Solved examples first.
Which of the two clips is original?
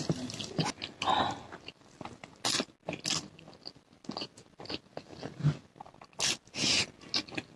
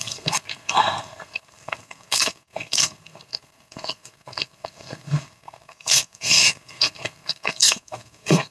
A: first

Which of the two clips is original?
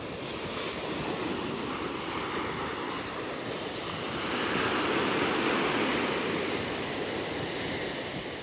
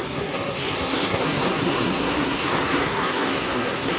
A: first